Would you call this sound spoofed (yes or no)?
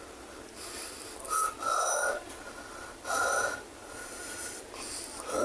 no